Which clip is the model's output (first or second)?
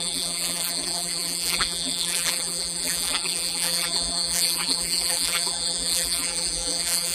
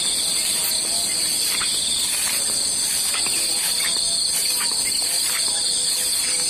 first